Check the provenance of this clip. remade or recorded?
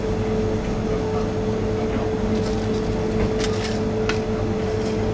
recorded